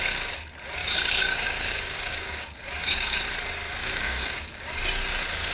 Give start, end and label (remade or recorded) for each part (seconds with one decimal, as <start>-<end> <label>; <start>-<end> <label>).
0.0-0.8 recorded; 0.8-3.2 remade; 3.2-3.8 recorded; 3.8-4.8 remade; 4.8-5.5 recorded